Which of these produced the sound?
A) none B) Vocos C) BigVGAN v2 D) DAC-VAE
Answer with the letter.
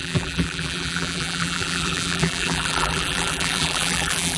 C